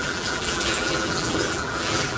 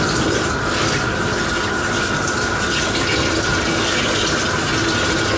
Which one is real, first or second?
second